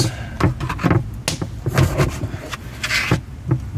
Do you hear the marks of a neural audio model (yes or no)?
no